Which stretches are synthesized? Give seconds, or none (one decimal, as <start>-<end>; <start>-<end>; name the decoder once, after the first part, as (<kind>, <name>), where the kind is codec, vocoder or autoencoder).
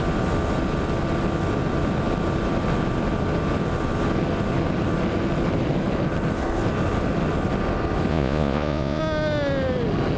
8.1-9.0 (vocoder, Vocos)